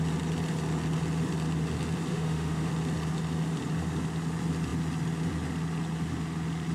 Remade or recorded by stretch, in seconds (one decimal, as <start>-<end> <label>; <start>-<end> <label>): 0.0-2.1 recorded; 2.1-2.7 remade; 2.7-6.7 recorded